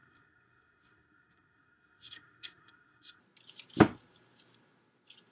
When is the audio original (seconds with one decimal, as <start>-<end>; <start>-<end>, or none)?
3.2-5.3